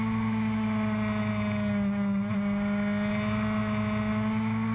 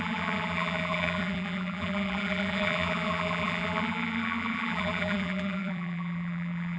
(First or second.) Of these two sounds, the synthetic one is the second